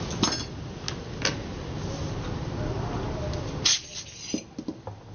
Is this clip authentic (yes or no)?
yes